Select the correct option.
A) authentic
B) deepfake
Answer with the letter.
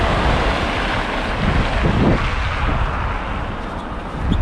A